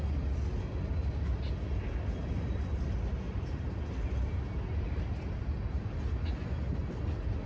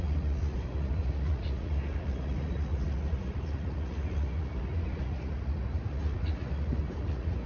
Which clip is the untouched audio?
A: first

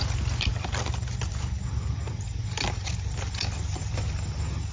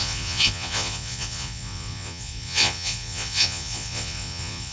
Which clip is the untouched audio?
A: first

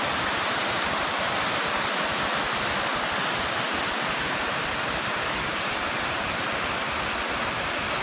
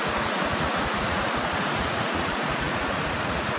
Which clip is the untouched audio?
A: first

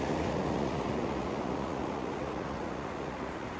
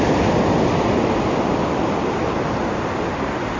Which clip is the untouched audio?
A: second